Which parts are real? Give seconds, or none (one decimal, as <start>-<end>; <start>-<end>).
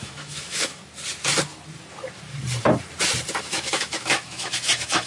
0.8-3.4